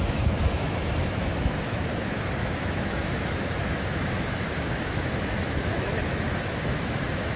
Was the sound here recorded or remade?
remade